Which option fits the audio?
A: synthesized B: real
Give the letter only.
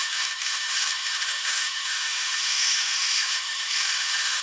A